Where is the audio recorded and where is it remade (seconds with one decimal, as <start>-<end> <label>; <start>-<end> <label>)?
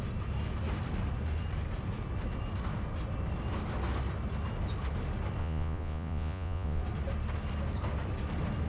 0.0-5.4 recorded; 5.4-6.8 remade; 6.8-8.7 recorded